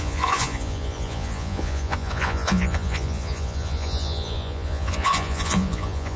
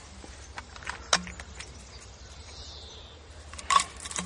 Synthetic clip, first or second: first